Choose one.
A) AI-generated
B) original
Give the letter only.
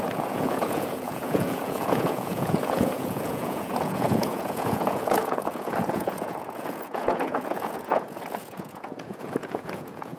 A